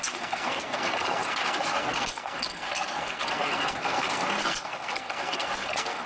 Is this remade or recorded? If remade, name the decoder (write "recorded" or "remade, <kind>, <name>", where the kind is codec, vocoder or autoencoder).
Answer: remade, codec, SNAC